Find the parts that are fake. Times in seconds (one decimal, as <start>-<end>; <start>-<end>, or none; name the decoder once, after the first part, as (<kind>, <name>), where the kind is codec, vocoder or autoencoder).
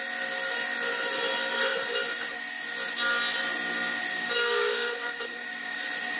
4.1-5.8 (codec, DAC)